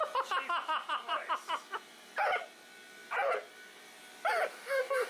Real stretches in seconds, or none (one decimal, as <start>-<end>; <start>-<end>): 0.0-4.5